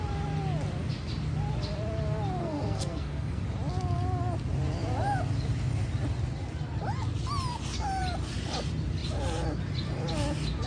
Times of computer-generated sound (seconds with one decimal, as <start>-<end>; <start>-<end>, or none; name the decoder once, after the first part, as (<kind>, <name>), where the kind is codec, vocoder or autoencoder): 2.4-3.4 (codec, SNAC)